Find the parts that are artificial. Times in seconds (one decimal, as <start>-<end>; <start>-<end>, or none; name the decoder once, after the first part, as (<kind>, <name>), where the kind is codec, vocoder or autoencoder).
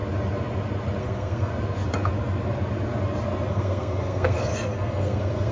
1.0-1.5 (codec, SNAC); 3.5-5.5